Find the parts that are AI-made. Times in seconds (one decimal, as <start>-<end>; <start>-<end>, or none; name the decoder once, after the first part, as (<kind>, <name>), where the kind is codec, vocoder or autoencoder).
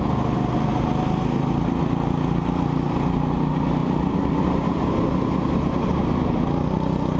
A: none